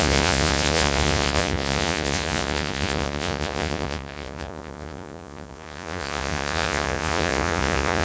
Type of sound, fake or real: fake